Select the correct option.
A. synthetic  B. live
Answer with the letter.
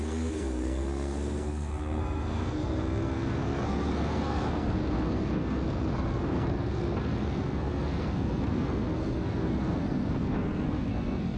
A